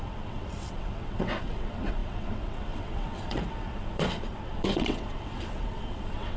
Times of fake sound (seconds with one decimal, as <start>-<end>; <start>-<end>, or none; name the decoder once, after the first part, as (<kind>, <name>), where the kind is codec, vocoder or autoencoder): 0.0-6.4 (vocoder, WaveNeXt)